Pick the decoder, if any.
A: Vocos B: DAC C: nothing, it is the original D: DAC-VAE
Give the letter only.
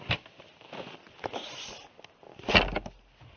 C